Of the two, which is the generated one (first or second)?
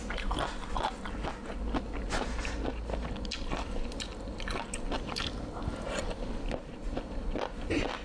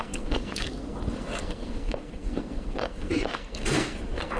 second